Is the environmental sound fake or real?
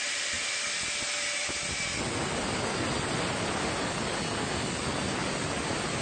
real